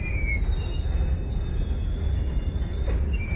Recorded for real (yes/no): yes